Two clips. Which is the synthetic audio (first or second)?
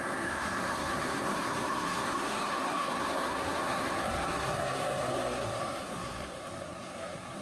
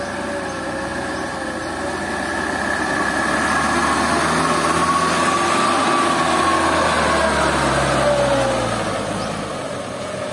first